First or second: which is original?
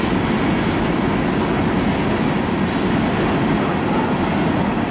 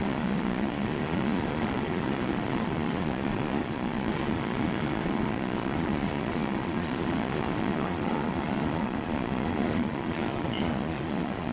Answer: first